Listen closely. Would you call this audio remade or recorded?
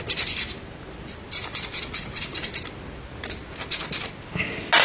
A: recorded